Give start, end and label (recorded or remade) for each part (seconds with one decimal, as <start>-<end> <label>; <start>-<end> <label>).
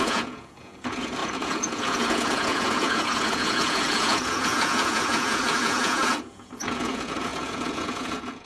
0.0-8.5 remade